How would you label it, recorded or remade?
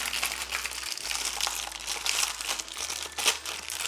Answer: recorded